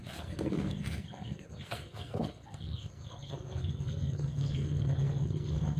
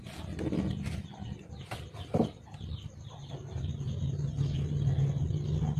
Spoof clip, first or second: first